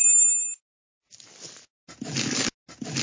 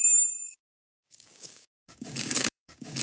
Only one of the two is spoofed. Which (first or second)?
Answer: second